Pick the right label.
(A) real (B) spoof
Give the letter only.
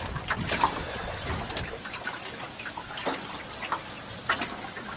A